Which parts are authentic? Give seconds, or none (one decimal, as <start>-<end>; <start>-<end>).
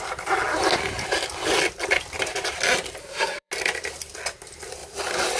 0.0-3.0; 3.5-5.4